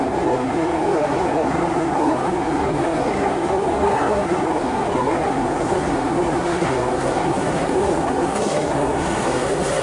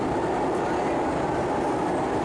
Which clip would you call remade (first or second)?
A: first